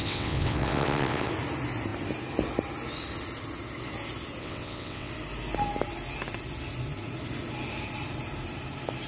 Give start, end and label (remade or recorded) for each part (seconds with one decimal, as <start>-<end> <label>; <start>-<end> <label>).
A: 0.0-1.3 remade; 1.3-4.4 recorded; 4.4-5.1 remade; 5.1-9.1 recorded